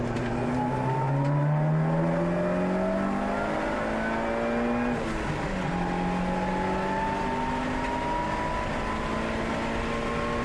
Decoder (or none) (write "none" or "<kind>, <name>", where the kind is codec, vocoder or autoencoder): none